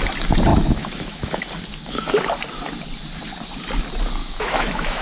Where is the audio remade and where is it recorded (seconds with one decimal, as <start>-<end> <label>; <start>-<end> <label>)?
0.0-0.5 recorded; 0.5-1.4 remade; 1.4-4.2 recorded; 4.2-5.0 remade